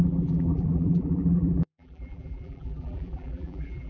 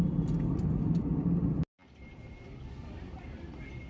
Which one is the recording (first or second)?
second